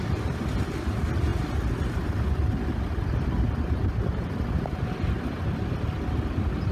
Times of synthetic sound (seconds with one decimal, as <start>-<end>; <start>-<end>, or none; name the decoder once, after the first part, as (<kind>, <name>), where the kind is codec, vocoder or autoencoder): none